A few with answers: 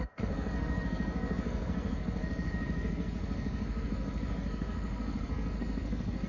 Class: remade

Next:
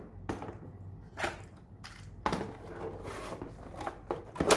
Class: recorded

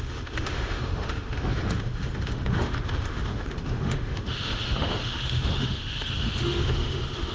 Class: remade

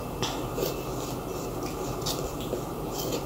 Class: recorded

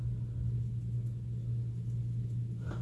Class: recorded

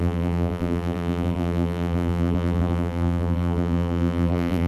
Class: remade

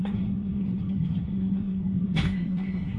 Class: remade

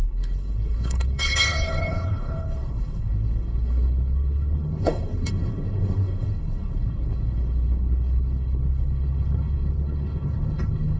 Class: remade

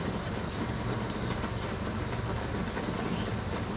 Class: recorded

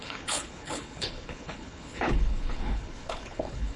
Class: remade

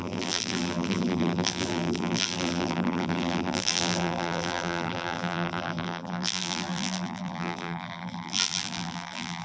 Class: remade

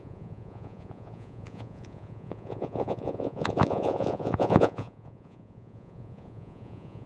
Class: remade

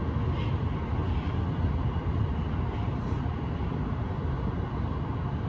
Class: recorded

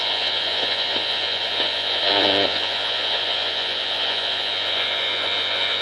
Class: remade